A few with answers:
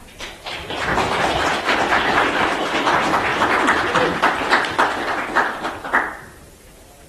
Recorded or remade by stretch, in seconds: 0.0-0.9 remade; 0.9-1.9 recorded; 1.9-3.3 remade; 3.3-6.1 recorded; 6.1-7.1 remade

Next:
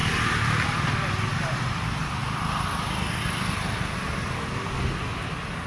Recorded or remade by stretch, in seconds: 0.0-5.7 recorded

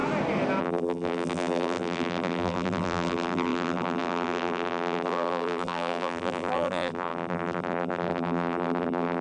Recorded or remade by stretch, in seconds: 0.0-0.6 recorded; 0.6-9.2 remade